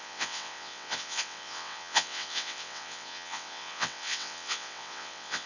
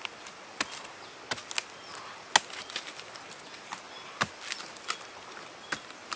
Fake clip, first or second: first